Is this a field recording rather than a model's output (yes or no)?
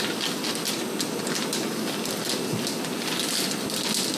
yes